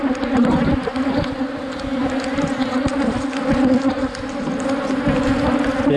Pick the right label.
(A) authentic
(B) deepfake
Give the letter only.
A